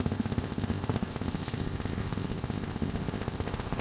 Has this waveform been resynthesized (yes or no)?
yes